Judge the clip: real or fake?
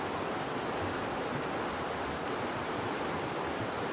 real